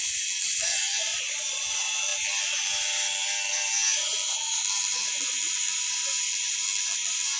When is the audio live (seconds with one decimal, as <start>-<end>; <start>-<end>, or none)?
0.0-1.1; 1.7-7.4